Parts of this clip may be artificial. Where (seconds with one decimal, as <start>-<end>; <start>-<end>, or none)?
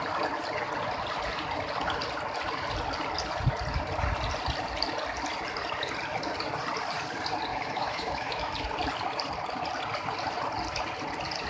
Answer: 7.5-8.5